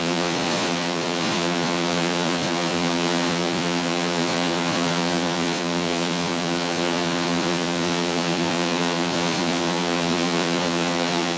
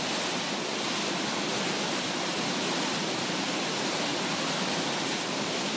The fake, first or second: first